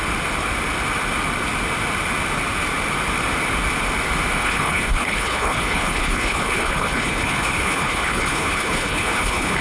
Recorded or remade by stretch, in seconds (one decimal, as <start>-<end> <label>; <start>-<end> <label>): 0.0-4.4 recorded; 4.4-9.6 remade